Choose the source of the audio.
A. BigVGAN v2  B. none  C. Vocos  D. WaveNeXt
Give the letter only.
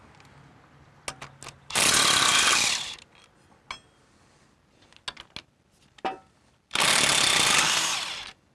B